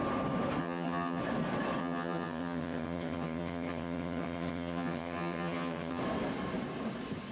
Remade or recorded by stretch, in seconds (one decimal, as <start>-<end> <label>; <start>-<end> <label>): 0.0-0.6 recorded; 0.6-1.2 remade; 1.2-1.8 recorded; 1.8-6.0 remade; 6.0-7.3 recorded